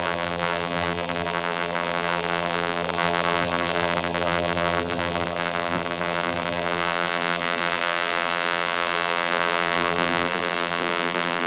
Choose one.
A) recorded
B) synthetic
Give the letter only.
B